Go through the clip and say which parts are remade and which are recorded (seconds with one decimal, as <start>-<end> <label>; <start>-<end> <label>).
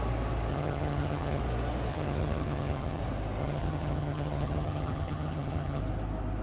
0.0-0.5 recorded; 0.5-1.4 remade; 1.4-1.9 recorded; 1.9-3.0 remade; 3.0-3.4 recorded; 3.4-5.8 remade; 5.8-6.4 recorded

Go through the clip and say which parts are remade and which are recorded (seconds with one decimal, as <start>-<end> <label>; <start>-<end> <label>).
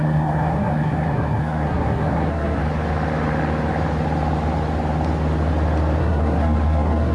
0.0-2.6 remade; 2.6-6.0 recorded; 6.0-7.1 remade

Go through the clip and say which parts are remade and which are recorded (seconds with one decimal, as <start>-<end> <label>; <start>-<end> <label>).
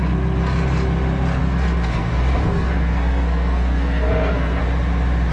0.0-1.4 recorded; 1.4-4.6 remade; 4.6-5.3 recorded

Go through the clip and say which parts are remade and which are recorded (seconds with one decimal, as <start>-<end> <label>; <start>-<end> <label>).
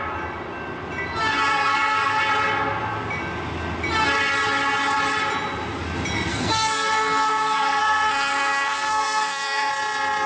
0.0-1.5 recorded; 1.5-2.2 remade; 2.2-6.3 recorded; 6.3-9.7 remade; 9.7-10.3 recorded